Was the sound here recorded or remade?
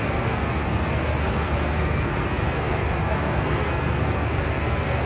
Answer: remade